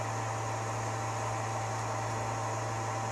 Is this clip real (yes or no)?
yes